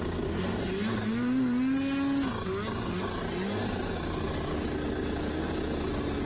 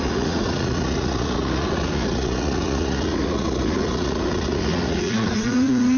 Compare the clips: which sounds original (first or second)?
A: first